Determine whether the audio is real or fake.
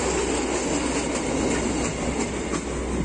real